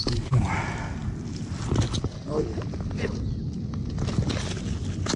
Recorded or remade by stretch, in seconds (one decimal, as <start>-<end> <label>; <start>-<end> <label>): 0.0-5.2 recorded